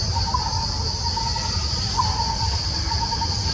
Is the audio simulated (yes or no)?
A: no